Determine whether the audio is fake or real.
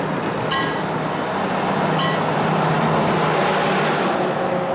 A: real